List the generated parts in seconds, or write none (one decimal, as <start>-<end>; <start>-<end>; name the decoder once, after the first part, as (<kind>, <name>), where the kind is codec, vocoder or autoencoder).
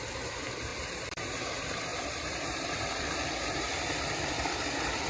0.7-1.4 (vocoder, BigVGAN v2); 1.9-5.1